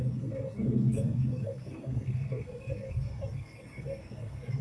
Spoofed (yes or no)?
yes